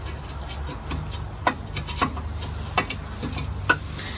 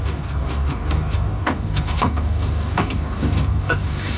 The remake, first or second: second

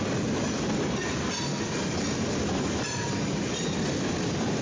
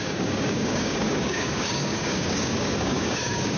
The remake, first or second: second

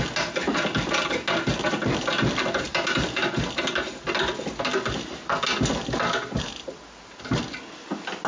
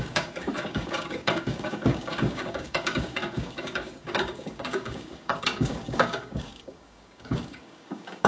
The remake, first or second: second